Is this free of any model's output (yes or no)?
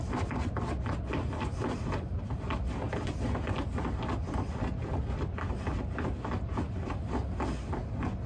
yes